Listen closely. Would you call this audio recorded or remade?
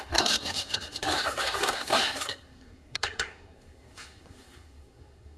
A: remade